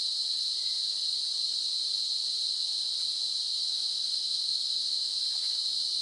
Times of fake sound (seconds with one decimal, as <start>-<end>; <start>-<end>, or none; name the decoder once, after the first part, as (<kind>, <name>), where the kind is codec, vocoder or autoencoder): 3.7-5.1 (autoencoder, DAC-VAE)